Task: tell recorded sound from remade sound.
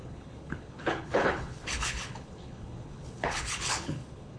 remade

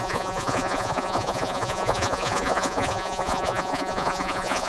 remade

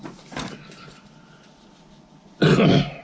recorded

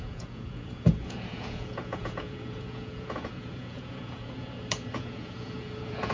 remade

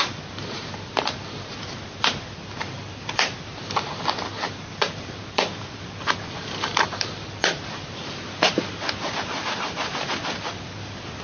remade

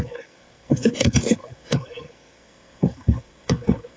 remade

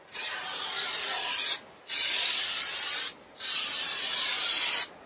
recorded